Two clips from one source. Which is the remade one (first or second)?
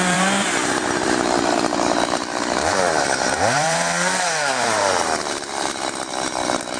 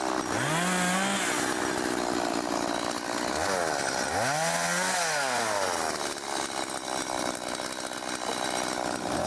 first